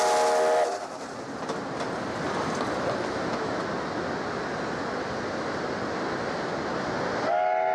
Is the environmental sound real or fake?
real